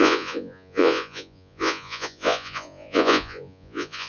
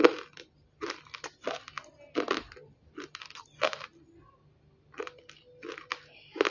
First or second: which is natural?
second